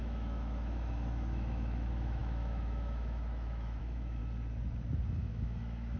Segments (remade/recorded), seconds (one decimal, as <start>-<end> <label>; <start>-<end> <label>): 0.0-4.2 remade; 4.2-5.2 recorded; 5.2-6.0 remade